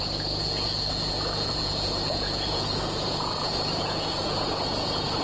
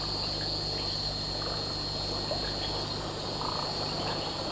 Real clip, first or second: second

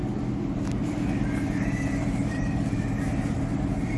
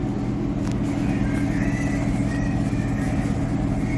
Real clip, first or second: second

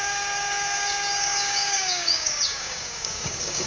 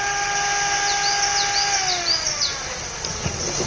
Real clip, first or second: second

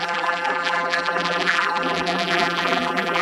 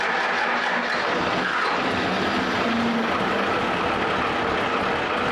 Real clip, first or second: second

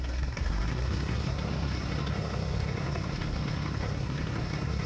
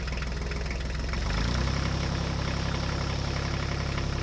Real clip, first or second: second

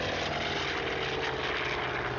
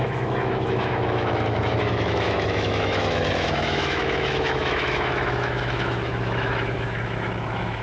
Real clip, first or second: first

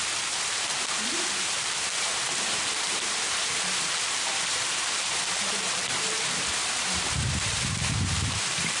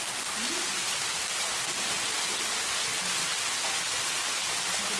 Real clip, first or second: second